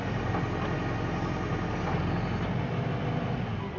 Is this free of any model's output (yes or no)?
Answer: yes